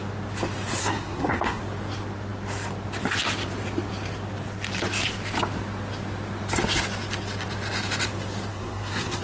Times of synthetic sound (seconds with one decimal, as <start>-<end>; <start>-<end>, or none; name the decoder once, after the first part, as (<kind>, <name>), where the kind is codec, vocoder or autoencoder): 0.8-1.6 (codec, SNAC); 8.5-9.2